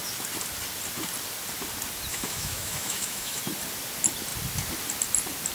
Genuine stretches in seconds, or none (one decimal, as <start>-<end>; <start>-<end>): 0.0-2.1; 3.4-5.5